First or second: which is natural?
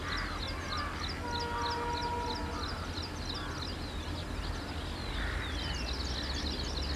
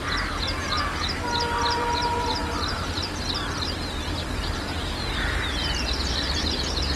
first